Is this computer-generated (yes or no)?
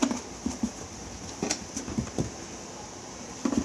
no